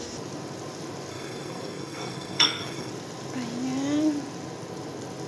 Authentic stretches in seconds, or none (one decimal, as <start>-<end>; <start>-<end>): 0.0-1.1; 2.9-5.3